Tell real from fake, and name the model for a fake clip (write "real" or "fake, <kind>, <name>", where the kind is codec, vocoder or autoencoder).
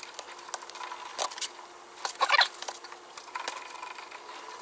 real